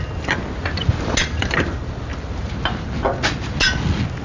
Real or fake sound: real